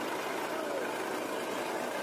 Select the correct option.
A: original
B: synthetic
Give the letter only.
A